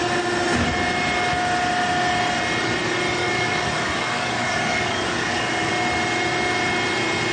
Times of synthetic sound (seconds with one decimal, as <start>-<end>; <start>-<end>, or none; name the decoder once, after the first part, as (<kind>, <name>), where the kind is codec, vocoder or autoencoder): 3.2-5.7 (codec, DAC)